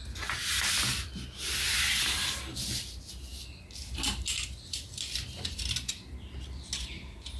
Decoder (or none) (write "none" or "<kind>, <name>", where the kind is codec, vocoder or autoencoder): none